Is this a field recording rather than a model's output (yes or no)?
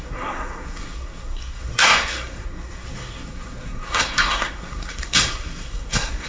no